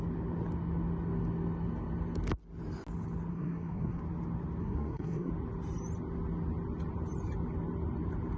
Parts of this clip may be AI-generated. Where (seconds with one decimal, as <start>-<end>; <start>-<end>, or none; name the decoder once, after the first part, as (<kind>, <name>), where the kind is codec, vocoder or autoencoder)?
3.3-4.0 (codec, SNAC); 4.6-5.3